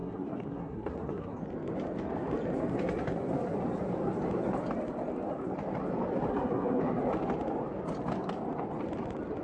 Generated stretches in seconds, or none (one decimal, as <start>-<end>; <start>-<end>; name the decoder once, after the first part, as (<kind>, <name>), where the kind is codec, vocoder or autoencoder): 0.0-1.4 (codec, SNAC); 6.3-6.8